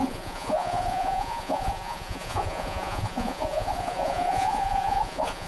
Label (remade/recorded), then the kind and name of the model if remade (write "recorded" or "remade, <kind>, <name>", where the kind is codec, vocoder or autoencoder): remade, vocoder, Vocos